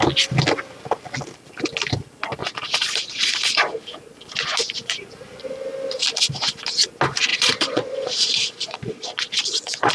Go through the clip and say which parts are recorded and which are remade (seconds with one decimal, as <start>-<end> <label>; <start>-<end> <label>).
0.0-2.4 recorded; 2.4-3.8 remade; 3.8-7.3 recorded; 7.3-9.9 remade